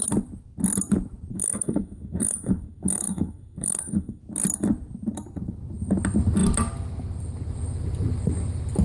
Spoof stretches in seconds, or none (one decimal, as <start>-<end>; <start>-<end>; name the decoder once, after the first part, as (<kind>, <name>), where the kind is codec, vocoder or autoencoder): 1.3-4.2 (codec, SNAC)